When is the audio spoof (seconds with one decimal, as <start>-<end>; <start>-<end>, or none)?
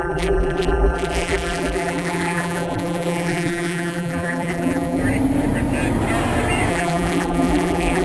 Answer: 0.0-5.0; 6.7-8.0